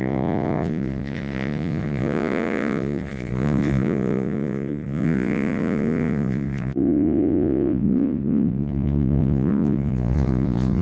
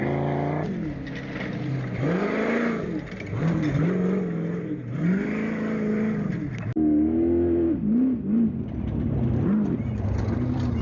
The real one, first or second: second